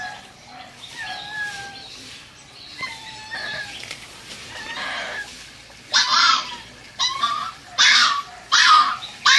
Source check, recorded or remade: remade